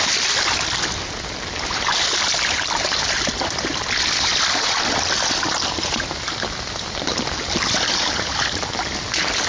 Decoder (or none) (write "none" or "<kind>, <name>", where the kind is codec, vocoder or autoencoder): none